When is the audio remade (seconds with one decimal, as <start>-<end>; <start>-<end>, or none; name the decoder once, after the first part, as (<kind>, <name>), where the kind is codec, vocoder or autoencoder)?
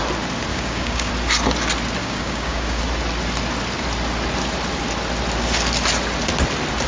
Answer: 0.5-1.1 (codec, DAC); 2.0-2.8